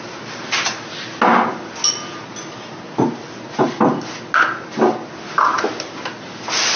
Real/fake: real